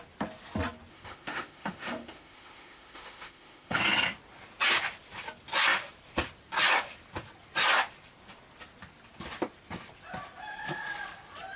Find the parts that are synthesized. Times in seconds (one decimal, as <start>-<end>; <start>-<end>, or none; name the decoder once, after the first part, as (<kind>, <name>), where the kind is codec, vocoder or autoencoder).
0.9-3.8 (autoencoder, DAC-VAE)

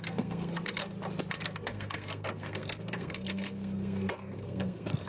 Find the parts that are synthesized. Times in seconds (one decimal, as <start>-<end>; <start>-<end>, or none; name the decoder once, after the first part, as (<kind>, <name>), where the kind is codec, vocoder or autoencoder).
0.0-0.8 (codec, SNAC); 1.4-5.1

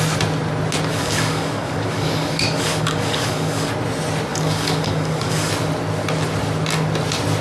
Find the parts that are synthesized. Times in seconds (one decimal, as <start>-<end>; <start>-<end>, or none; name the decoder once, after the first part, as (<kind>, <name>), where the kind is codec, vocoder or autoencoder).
0.9-3.7 (codec, DAC); 4.3-5.5

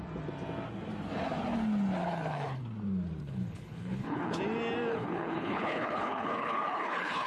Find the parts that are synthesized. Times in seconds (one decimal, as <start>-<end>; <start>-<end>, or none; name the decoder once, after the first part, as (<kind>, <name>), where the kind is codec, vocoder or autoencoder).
2.0-2.6 (codec, HILCodec); 3.2-4.4; 4.9-7.3